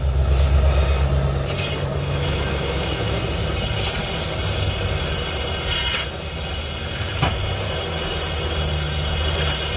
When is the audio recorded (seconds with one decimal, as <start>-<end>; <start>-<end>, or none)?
0.0-1.9; 3.2-9.8